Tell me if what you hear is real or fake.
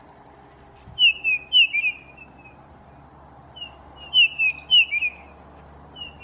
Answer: real